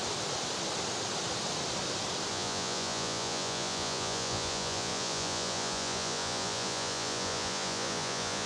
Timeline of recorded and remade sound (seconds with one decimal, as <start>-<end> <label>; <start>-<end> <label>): 0.0-2.3 recorded; 2.3-8.5 remade